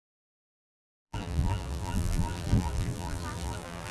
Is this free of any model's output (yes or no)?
no